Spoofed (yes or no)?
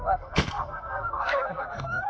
yes